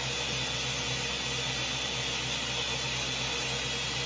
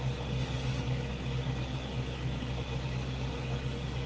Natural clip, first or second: first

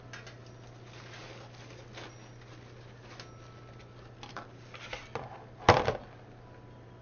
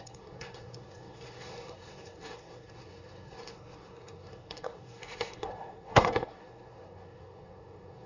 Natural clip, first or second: first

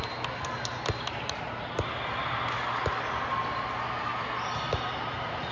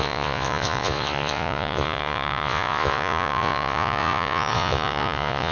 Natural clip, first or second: first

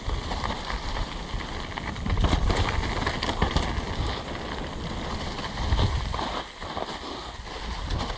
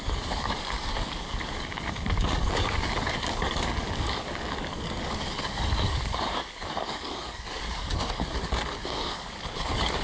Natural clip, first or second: first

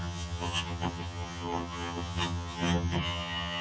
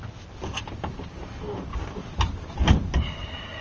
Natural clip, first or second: second